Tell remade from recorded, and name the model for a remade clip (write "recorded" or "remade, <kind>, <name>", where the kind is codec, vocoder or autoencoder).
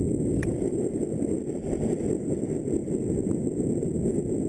recorded